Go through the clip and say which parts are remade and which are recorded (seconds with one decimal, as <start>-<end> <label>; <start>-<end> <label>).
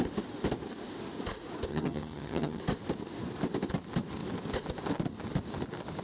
0.0-1.7 recorded; 1.7-2.6 remade; 2.6-6.0 recorded